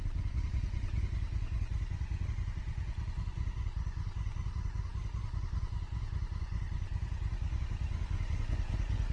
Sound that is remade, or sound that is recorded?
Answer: remade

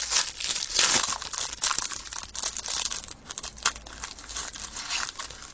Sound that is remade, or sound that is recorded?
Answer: recorded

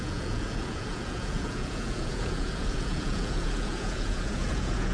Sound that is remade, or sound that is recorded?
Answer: remade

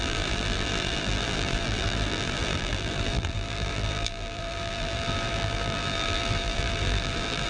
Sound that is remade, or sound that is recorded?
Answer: remade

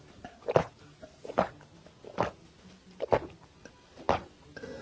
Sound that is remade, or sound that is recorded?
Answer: recorded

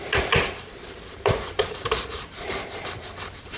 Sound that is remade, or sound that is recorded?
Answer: remade